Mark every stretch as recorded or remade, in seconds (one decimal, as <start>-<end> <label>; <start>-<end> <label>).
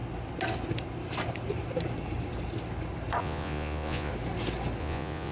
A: 0.0-3.2 recorded; 3.2-4.1 remade; 4.1-4.8 recorded; 4.8-5.3 remade